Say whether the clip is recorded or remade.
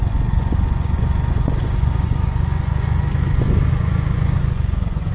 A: remade